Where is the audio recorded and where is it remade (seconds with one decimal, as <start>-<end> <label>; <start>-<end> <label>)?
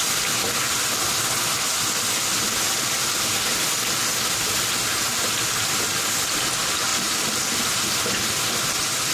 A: 0.0-9.1 recorded